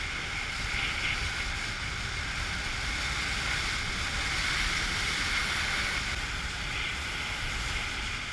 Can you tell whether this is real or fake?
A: real